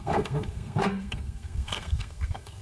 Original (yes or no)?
no